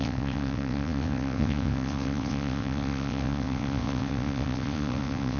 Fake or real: fake